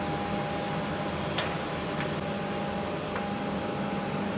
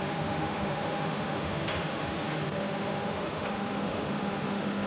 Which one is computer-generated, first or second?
second